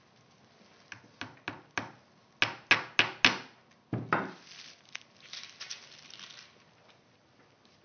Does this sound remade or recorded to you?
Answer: recorded